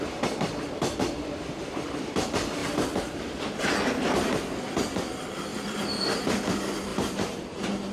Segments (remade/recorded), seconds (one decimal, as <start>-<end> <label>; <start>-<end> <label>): 0.0-5.5 recorded; 5.5-6.2 remade; 6.2-6.9 recorded; 6.9-7.5 remade; 7.5-7.9 recorded